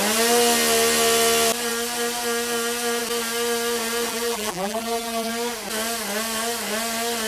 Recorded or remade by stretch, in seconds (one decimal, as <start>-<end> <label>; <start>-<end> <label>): 0.0-4.1 recorded; 4.1-5.3 remade; 5.3-7.3 recorded